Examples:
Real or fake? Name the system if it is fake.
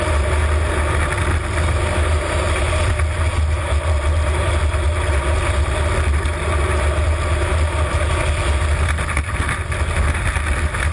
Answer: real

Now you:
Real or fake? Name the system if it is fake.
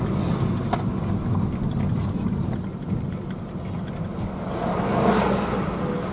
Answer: real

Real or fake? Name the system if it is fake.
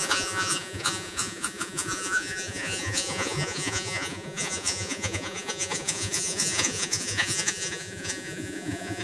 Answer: fake, vocoder, Vocos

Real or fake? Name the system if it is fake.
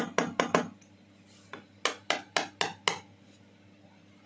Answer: real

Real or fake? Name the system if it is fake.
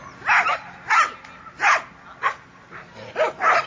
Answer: real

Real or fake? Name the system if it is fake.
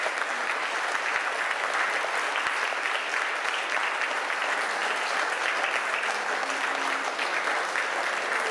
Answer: real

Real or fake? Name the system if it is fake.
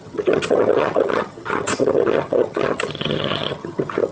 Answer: fake, vocoder, HiFi-GAN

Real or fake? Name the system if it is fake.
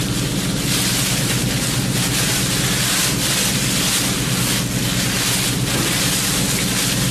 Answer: real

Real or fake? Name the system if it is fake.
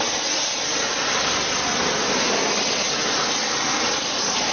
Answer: real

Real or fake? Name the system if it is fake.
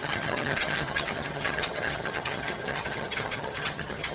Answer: fake, vocoder, HiFi-GAN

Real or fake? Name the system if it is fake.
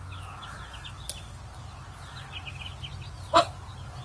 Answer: real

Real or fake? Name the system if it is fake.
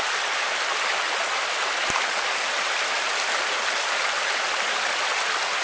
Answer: real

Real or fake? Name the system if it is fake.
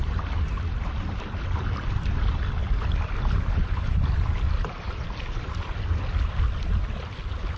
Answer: real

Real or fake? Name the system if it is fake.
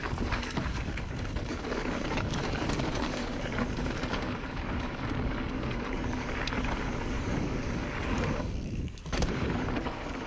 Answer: fake, codec, DAC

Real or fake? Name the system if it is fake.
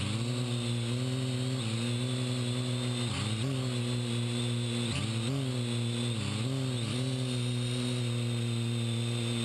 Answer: real